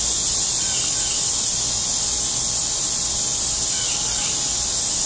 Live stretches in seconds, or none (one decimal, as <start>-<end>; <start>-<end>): 0.0-5.1